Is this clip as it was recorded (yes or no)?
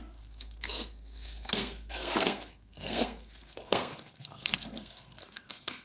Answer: no